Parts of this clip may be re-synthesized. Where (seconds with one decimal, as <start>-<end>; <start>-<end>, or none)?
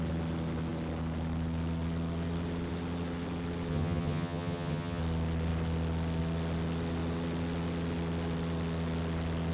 3.7-5.0